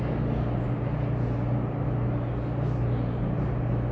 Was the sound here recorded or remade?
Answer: recorded